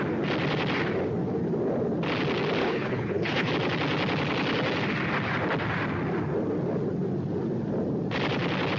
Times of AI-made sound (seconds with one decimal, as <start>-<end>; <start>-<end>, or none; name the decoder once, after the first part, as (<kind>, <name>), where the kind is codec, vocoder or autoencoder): 2.6-3.5 (codec, HILCodec)